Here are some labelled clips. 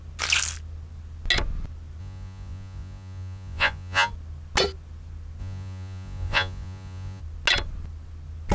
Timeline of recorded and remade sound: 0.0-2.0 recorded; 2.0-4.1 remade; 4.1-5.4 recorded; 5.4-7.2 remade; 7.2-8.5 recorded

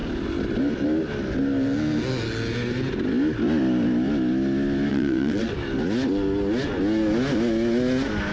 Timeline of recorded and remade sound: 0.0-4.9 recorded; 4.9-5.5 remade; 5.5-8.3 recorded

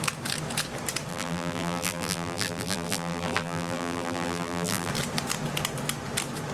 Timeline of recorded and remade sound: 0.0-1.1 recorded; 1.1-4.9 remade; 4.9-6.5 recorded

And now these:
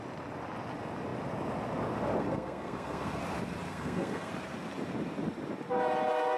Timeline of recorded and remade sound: 0.0-2.2 recorded; 2.2-3.2 remade; 3.2-3.7 recorded; 3.7-4.3 remade; 4.3-6.4 recorded

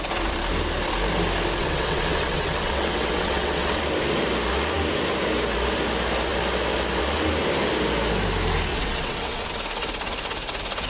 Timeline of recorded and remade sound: 0.0-1.6 recorded; 1.6-3.8 remade; 3.8-8.7 recorded; 8.7-9.4 remade; 9.4-10.9 recorded

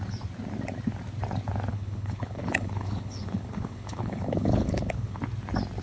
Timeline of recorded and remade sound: 0.0-1.7 recorded; 1.7-5.2 remade; 5.2-5.8 recorded